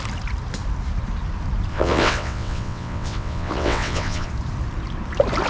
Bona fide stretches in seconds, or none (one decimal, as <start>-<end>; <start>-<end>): 0.0-1.7; 4.3-5.5